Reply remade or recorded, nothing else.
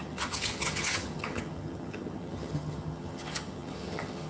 remade